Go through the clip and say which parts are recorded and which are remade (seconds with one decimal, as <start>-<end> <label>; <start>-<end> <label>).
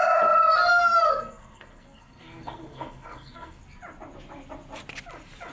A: 0.0-0.7 recorded; 0.7-3.6 remade; 3.6-5.5 recorded